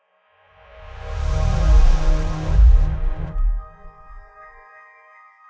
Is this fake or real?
real